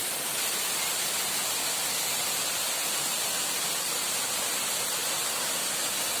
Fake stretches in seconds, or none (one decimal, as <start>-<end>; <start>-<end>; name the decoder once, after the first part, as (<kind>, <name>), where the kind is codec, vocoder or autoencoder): none